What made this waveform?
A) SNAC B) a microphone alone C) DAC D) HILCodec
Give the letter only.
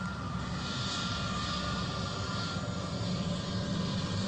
B